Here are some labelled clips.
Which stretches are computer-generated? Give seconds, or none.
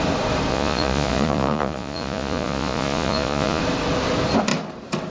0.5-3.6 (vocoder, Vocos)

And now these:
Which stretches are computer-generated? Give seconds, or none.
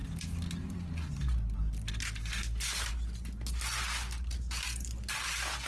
none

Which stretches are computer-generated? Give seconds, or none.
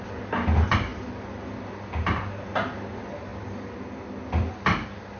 none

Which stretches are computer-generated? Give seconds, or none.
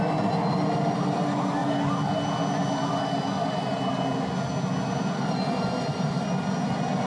none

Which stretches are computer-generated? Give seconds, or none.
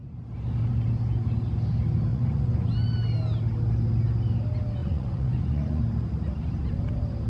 2.1-2.7 (vocoder, Vocos); 4.8-5.8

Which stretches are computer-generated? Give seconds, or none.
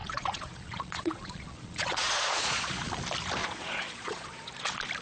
0.0-3.0 (vocoder, Vocos); 3.4-4.5